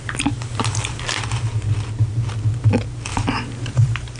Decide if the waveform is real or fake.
real